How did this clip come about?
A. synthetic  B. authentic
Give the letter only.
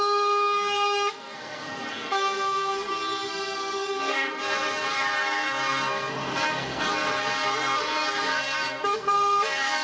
A